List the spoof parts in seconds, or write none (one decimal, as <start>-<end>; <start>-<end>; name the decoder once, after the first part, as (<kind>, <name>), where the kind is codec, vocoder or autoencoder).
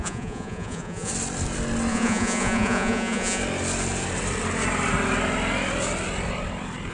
0.0-1.1 (vocoder, Vocos); 1.9-3.4